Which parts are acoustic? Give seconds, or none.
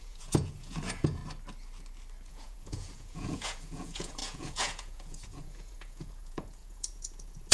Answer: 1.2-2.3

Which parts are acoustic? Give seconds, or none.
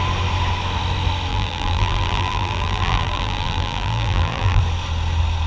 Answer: 0.0-1.3; 4.6-5.5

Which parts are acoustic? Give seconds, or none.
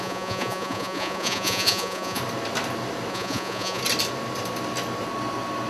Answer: 2.2-3.1; 3.8-5.7